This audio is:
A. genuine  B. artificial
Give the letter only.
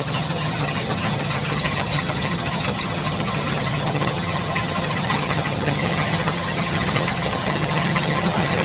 B